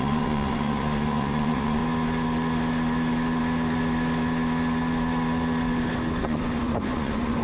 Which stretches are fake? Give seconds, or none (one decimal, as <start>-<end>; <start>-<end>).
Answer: 0.0-1.8; 6.2-7.4